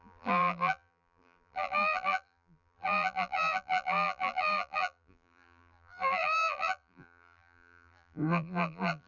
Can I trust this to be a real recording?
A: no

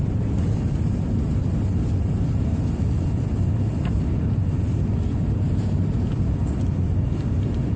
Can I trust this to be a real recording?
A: yes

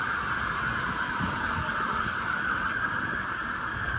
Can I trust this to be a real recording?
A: yes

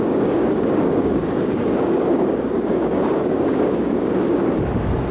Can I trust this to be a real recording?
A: no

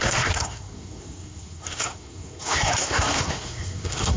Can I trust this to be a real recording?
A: no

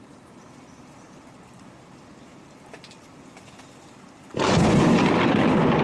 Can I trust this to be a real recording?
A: yes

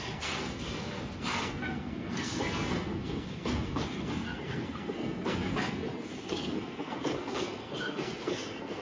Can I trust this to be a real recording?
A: no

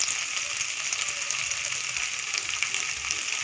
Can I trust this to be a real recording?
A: yes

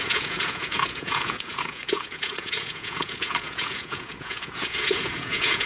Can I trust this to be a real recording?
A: no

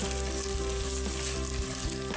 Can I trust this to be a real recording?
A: yes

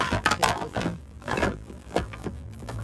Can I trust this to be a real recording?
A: no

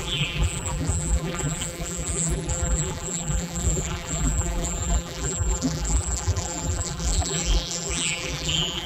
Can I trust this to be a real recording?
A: no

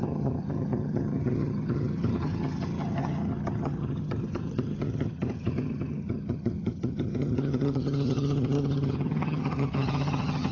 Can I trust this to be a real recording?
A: no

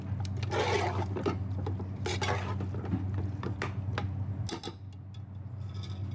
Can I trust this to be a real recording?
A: yes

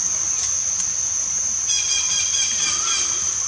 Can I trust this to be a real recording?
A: yes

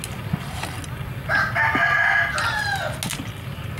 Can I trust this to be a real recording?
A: yes